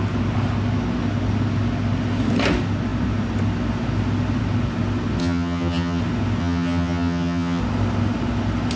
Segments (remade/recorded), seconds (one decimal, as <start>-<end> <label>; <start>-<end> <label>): 0.0-5.2 recorded; 5.2-6.0 remade; 6.0-6.4 recorded; 6.4-7.6 remade; 7.6-8.8 recorded